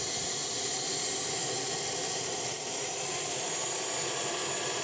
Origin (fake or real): real